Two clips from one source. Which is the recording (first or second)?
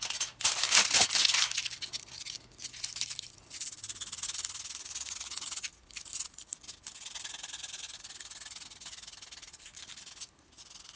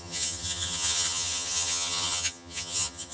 first